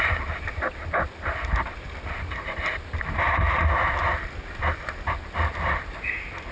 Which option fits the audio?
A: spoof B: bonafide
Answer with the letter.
B